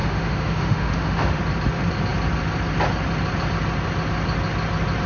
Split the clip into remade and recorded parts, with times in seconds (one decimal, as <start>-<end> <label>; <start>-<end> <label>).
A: 0.0-1.4 remade; 1.4-5.1 recorded